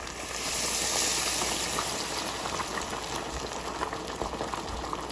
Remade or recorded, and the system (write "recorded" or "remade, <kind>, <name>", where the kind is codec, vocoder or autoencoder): recorded